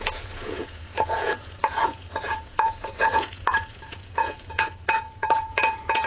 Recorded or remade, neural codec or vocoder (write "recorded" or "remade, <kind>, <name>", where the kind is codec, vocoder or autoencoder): remade, vocoder, Vocos